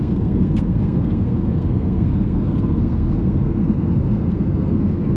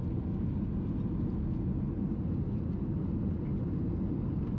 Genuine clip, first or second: second